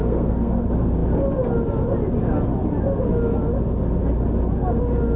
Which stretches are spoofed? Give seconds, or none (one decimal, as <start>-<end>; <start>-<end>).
0.0-0.6